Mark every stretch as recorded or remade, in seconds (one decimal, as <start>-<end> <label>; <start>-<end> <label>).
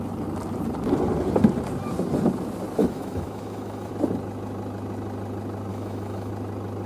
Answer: 0.0-2.8 recorded; 2.8-3.9 remade; 3.9-5.7 recorded; 5.7-6.3 remade; 6.3-6.9 recorded